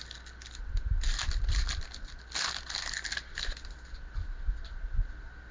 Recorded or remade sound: recorded